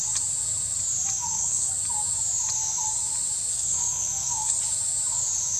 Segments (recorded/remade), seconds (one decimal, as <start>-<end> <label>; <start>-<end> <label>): 0.0-1.2 recorded; 1.2-1.7 remade; 1.7-3.5 recorded; 3.5-4.6 remade; 4.6-5.6 recorded